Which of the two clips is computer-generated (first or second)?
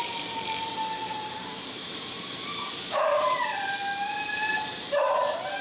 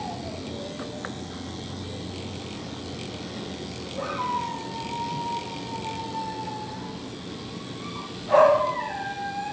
first